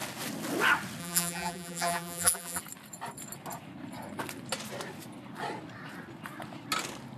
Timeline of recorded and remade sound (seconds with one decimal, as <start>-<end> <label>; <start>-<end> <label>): 0.0-1.0 recorded; 1.0-2.6 remade; 2.6-7.2 recorded